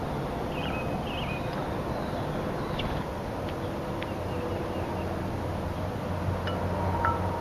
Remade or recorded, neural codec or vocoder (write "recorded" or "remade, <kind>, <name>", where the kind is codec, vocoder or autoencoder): recorded